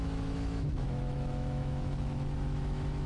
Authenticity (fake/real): fake